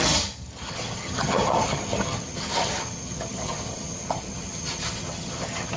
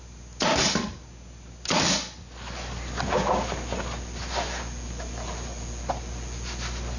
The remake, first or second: first